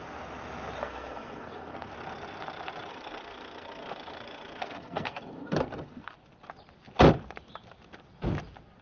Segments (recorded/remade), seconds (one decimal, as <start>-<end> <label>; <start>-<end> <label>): 0.0-0.8 recorded; 0.8-1.9 remade; 1.9-2.9 recorded; 2.9-6.1 remade; 6.1-8.8 recorded